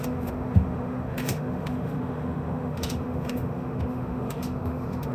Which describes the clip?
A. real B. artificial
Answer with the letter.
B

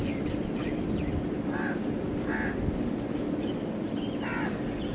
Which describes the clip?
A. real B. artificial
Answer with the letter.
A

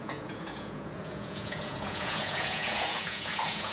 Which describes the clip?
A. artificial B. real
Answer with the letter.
A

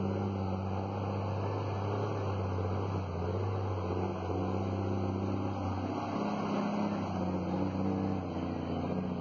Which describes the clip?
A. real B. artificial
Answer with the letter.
A